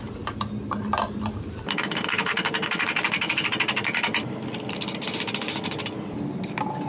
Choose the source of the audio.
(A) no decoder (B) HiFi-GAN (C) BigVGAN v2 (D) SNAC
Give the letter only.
A